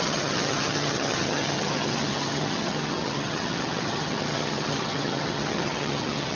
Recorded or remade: remade